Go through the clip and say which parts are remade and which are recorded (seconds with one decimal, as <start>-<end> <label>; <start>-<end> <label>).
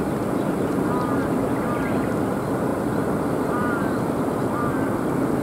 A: 0.0-2.7 recorded; 2.7-4.7 remade; 4.7-5.4 recorded